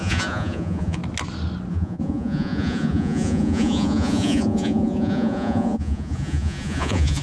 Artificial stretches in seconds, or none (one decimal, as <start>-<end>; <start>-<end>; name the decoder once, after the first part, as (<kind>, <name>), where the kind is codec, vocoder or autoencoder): 0.0-1.0 (vocoder, Vocos); 1.7-7.2